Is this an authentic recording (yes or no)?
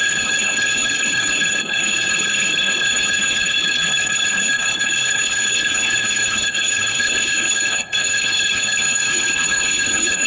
no